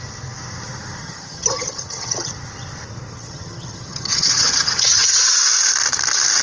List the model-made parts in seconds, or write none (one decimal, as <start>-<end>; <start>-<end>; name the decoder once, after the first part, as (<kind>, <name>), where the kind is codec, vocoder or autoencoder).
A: 1.0-2.3 (vocoder, HiFi-GAN); 3.1-5.4